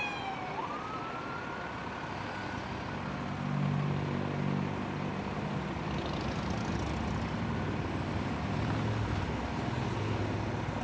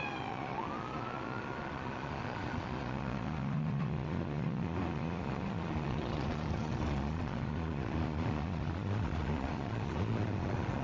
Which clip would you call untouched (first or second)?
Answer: first